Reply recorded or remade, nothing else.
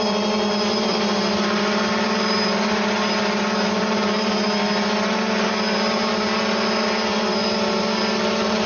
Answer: remade